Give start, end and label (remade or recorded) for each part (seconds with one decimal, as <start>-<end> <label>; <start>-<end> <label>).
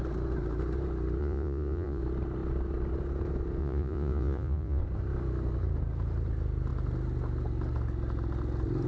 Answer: 0.0-1.2 recorded; 1.2-2.0 remade; 2.0-3.6 recorded; 3.6-4.8 remade; 4.8-8.9 recorded